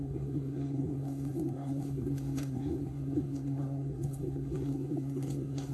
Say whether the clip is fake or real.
fake